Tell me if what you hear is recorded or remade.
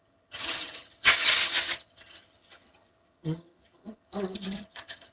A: remade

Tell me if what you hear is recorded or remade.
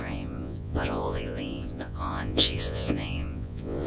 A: remade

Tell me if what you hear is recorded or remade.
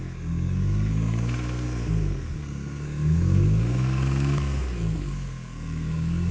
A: remade